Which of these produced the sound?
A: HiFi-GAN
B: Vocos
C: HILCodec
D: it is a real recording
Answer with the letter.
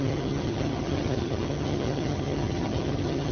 A